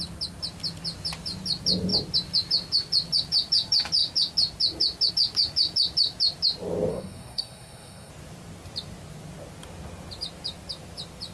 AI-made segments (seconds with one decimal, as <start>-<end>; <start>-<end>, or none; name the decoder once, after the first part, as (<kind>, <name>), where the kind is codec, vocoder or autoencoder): 6.9-8.1 (codec, SNAC)